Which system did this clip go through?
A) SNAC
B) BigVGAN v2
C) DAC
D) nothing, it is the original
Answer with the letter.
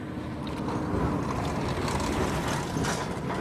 D